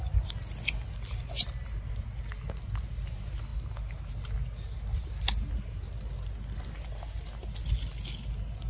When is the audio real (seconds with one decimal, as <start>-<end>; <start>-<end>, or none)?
0.0-8.7